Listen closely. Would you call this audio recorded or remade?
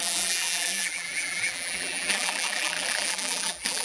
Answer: remade